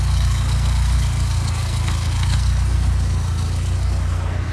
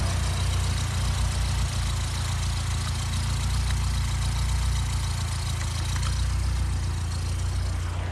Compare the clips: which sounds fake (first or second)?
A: first